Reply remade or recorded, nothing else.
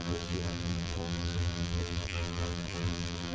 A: remade